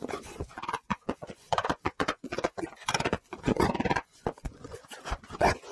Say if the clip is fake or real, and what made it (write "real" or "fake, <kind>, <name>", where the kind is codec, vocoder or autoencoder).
fake, vocoder, Vocos